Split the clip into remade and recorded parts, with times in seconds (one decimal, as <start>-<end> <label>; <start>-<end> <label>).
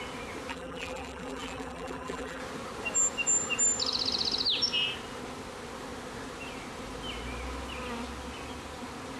0.0-0.5 recorded; 0.5-2.4 remade; 2.4-9.2 recorded